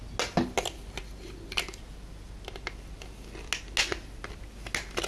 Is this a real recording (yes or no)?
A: yes